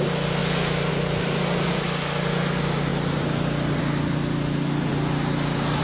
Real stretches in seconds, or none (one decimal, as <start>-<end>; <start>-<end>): 0.0-5.8